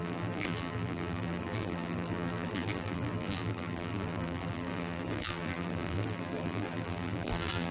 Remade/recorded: remade